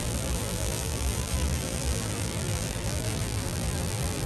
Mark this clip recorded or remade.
remade